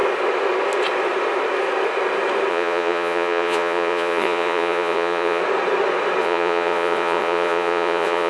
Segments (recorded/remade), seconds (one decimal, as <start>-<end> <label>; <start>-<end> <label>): 0.0-2.5 recorded; 2.5-5.4 remade; 5.4-6.2 recorded; 6.2-8.3 remade

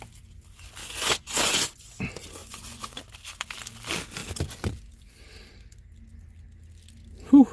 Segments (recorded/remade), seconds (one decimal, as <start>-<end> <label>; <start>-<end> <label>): 0.0-0.8 recorded; 0.8-1.9 remade; 1.9-2.4 recorded; 2.4-3.0 remade; 3.0-7.5 recorded

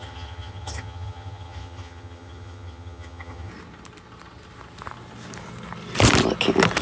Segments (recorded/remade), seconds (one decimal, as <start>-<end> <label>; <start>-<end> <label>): 0.0-3.5 remade; 3.5-6.8 recorded

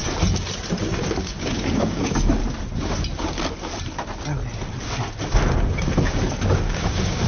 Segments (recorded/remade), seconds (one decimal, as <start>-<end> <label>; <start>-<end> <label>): 0.0-1.2 recorded; 1.2-2.4 remade; 2.4-6.5 recorded; 6.5-7.3 remade

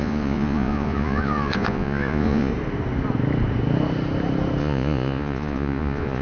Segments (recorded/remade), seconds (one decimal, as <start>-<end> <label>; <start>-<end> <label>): 0.0-2.5 remade; 2.5-4.6 recorded; 4.6-6.2 remade

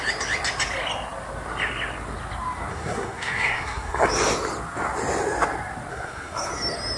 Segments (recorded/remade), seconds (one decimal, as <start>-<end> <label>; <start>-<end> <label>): 0.0-2.7 recorded; 2.7-4.1 remade; 4.1-5.9 recorded; 5.9-6.5 remade; 6.5-7.0 recorded

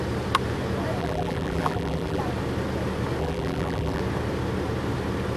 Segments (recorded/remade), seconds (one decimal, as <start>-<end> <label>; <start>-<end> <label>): 0.0-1.0 recorded; 1.0-2.2 remade; 2.2-3.2 recorded; 3.2-4.0 remade; 4.0-5.4 recorded

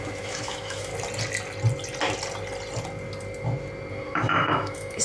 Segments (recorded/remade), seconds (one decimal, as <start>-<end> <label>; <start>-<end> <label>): 0.0-0.9 remade; 0.9-3.9 recorded; 3.9-5.0 remade